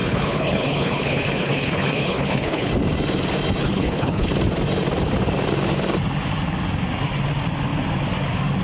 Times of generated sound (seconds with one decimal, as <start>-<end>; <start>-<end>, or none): 0.0-2.7; 3.6-4.3

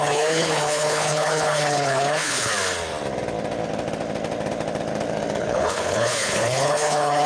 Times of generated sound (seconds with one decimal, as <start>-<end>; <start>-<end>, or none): 0.0-2.5; 5.4-7.3

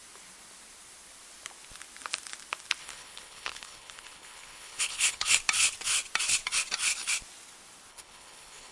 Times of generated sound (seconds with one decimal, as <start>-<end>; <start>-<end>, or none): 2.8-5.3; 7.9-8.7